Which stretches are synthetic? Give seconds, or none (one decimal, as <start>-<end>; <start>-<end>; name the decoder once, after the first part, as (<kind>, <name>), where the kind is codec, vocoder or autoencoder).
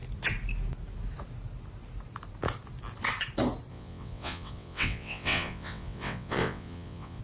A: 3.7-7.2 (vocoder, WaveNeXt)